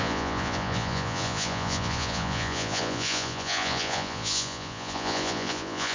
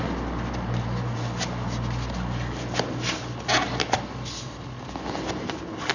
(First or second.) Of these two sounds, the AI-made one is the first